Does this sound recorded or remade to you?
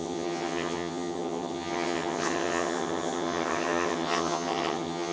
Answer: remade